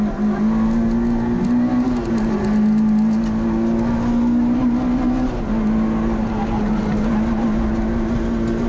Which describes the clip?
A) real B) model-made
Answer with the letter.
A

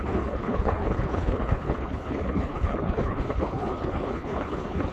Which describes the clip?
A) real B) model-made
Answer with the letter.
B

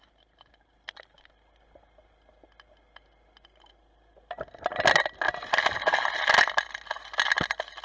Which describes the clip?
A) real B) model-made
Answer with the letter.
A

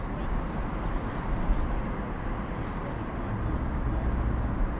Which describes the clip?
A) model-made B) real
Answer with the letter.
B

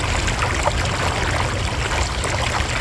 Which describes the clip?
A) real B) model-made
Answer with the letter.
A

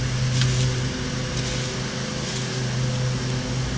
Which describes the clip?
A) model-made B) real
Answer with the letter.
B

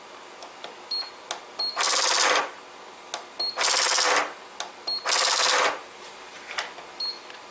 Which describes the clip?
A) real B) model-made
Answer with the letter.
A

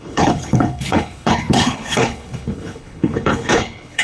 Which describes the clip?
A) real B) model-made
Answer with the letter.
B